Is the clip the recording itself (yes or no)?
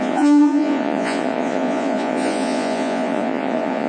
no